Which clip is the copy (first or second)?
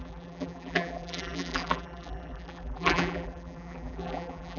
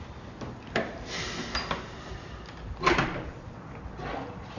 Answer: first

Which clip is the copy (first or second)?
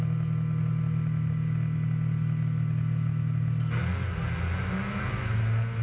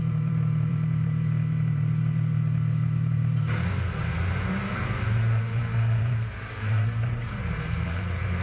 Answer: second